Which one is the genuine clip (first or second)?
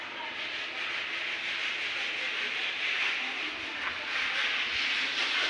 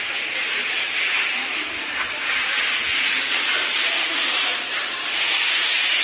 first